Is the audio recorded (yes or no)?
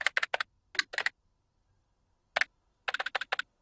yes